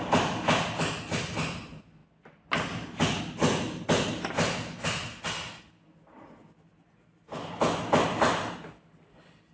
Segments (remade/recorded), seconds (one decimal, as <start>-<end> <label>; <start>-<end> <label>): 0.0-9.5 recorded